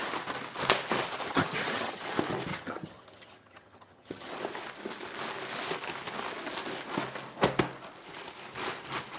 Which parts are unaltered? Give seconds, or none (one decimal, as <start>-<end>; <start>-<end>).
0.0-1.3; 2.0-2.5; 4.3-9.2